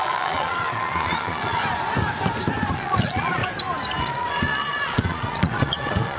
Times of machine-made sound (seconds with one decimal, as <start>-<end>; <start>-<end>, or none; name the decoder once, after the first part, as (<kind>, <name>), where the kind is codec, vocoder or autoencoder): 0.0-1.6 (vocoder, Vocos); 2.7-3.4; 4.0-6.2